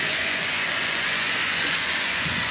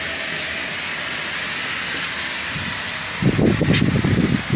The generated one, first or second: first